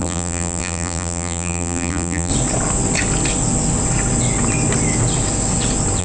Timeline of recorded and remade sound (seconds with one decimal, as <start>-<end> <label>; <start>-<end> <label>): 0.0-2.3 remade; 2.3-6.0 recorded